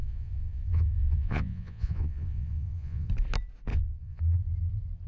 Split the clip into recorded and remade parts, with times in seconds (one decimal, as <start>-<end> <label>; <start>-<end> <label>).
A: 0.0-3.1 remade; 3.1-3.7 recorded; 3.7-4.2 remade; 4.2-5.1 recorded